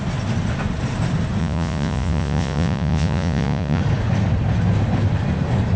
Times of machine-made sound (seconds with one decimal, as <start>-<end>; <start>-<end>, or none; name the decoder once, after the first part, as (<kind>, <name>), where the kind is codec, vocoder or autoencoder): 1.4-3.8 (vocoder, Vocos)